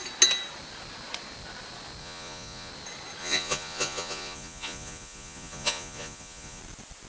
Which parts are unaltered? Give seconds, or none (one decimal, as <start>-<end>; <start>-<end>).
0.0-2.0; 2.7-3.2; 6.6-7.1